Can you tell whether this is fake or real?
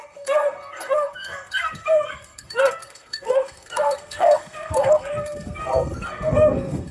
fake